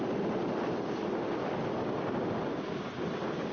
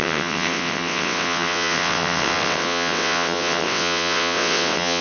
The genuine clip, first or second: first